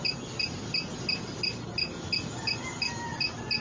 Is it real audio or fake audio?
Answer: real